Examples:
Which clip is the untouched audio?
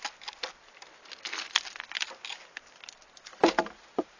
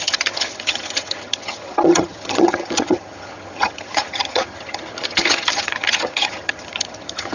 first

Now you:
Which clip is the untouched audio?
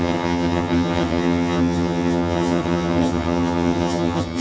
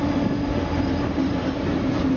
second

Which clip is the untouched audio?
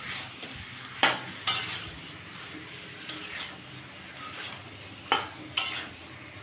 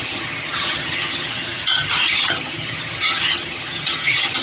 first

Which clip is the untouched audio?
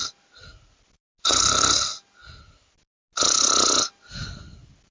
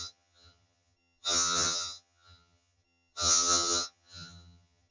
first